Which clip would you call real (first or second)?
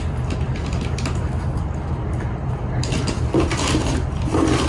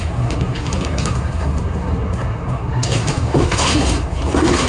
first